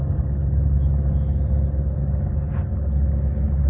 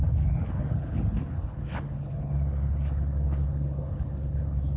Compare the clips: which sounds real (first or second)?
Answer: first